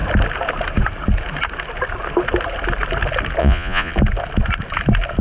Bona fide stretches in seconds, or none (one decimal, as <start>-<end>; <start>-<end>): 0.0-3.4; 3.9-5.2